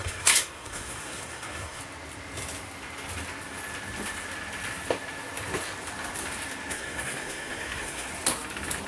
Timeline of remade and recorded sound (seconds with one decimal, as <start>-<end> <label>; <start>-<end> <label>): 0.0-1.8 remade; 1.8-6.7 recorded; 6.7-8.1 remade; 8.1-8.9 recorded